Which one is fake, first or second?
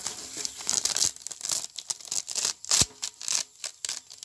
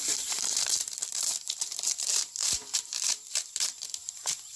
second